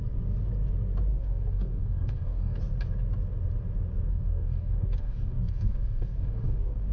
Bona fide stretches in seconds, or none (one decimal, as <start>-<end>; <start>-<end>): 0.0-1.1; 2.6-4.1